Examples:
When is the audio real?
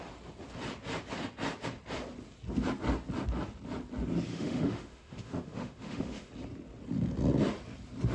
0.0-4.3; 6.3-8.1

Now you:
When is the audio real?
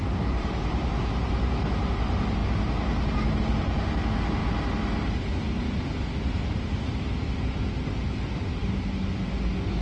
0.0-9.8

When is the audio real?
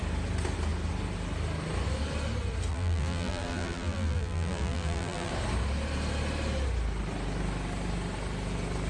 0.0-2.7; 5.3-8.9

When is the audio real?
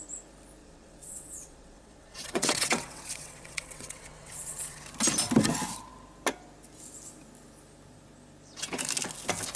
0.0-0.6; 4.8-9.6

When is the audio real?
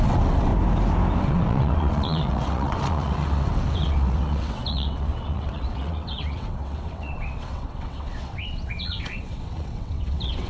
0.5-1.2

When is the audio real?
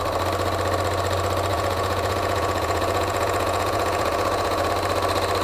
0.0-1.5; 4.7-5.4